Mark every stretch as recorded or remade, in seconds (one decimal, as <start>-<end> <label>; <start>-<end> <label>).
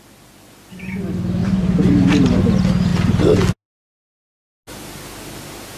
0.0-1.4 recorded; 1.4-2.4 remade; 2.4-5.8 recorded